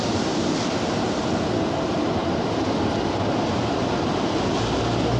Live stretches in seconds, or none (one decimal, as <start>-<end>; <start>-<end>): 0.0-2.2; 3.0-5.2